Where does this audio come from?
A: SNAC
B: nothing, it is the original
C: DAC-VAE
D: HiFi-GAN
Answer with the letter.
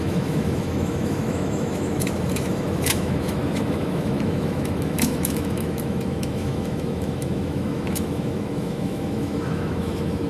C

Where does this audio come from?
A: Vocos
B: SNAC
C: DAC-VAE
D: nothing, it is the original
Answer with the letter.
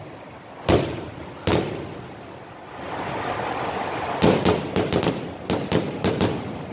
D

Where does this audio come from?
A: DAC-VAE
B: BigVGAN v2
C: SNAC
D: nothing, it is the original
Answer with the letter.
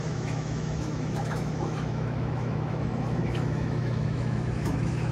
A